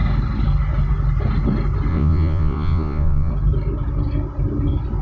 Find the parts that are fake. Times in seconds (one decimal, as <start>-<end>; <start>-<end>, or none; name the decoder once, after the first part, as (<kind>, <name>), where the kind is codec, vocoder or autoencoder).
1.9-3.3 (vocoder, Vocos)